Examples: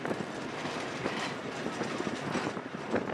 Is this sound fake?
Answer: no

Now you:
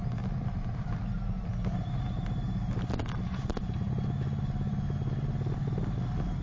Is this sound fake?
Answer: no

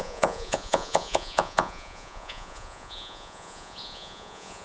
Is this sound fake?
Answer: yes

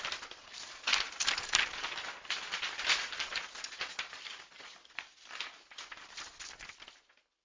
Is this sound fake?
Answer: no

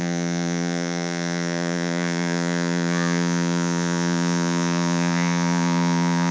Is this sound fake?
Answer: yes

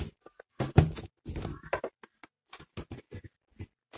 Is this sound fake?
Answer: no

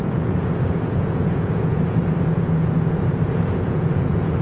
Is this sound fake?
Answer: yes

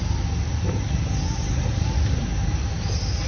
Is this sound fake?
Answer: no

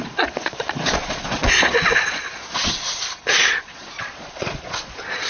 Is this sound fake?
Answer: yes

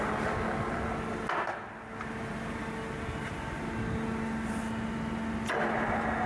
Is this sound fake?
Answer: no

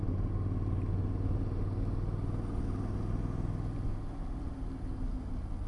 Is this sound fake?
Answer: no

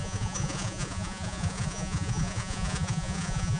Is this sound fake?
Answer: yes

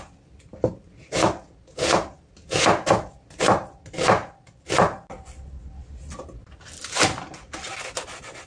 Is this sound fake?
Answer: no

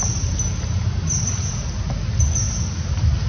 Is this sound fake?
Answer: no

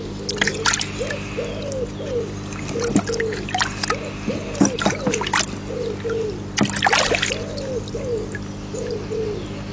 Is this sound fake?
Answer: no